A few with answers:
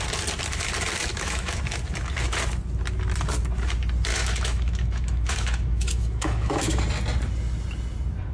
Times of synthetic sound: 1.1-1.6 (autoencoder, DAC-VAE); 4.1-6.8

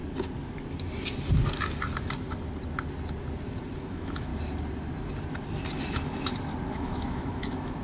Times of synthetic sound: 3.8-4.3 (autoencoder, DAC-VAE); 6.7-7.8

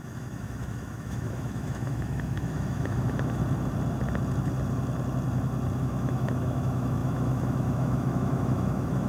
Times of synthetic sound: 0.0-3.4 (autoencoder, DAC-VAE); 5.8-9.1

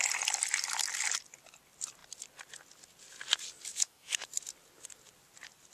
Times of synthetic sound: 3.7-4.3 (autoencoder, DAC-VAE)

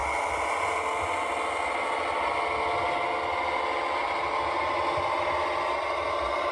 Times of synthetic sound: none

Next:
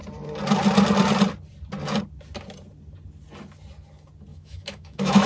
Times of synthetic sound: 4.3-5.3 (autoencoder, DAC-VAE)

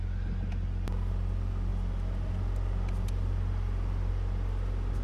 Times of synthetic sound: none

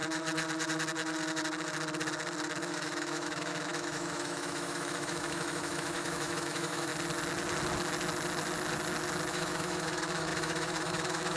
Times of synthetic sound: 2.6-6.9 (autoencoder, DAC-VAE); 9.3-11.4